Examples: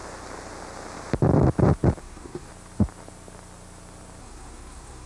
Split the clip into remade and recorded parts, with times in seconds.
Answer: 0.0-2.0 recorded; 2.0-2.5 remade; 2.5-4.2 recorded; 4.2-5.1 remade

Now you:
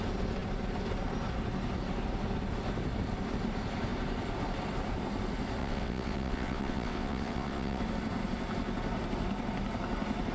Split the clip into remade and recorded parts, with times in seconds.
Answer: 0.0-5.6 recorded; 5.6-7.8 remade; 7.8-10.3 recorded

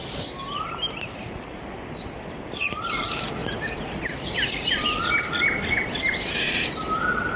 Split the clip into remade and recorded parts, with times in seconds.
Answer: 0.0-3.4 remade; 3.4-6.7 recorded; 6.7-7.4 remade

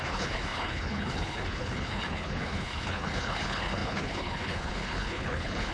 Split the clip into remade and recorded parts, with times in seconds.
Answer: 0.0-5.7 remade

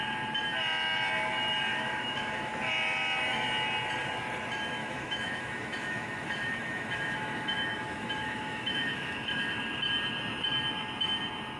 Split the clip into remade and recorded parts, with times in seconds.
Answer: 0.0-1.7 recorded; 1.7-2.5 remade; 2.5-4.8 recorded; 4.8-9.6 remade; 9.6-11.6 recorded